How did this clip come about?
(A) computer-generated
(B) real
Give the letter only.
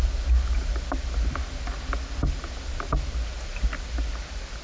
B